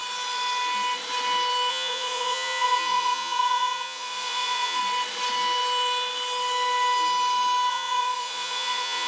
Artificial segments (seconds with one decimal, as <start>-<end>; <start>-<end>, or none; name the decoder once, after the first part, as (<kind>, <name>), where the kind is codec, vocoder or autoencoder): 1.7-4.8 (vocoder, Vocos); 7.7-9.1